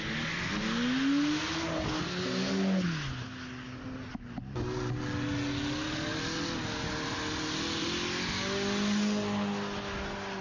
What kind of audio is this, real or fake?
real